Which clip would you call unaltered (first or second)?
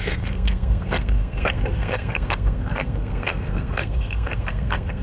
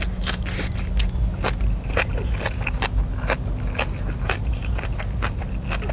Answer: second